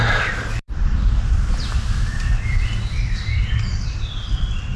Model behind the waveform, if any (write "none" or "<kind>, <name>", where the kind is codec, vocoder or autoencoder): vocoder, BigVGAN v2